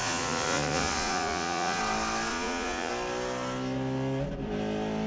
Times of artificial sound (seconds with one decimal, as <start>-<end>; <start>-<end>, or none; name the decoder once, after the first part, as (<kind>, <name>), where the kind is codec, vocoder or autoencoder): 0.0-1.8 (vocoder, Vocos); 2.3-2.9